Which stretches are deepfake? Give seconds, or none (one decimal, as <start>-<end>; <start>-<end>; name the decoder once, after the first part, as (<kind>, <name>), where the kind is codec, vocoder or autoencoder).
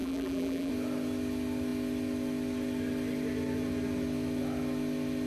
0.0-0.7 (vocoder, BigVGAN v2)